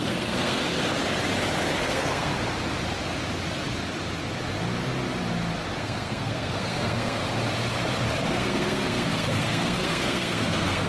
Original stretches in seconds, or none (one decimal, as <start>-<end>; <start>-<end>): 0.6-1.8; 2.3-5.8; 7.2-8.3